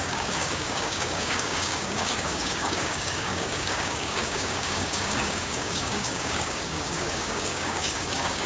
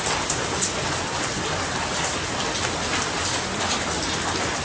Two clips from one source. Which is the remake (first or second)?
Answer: first